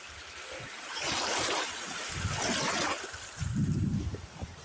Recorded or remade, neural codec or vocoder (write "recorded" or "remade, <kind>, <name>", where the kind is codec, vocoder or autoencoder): remade, vocoder, BigVGAN v2